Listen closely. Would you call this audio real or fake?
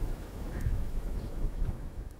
fake